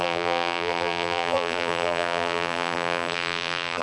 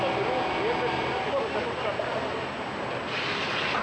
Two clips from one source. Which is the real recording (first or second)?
second